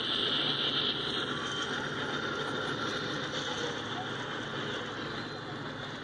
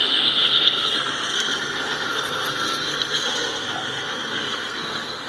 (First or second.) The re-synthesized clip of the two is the second